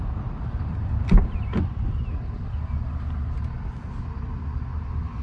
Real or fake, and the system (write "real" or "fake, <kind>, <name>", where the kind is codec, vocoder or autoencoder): real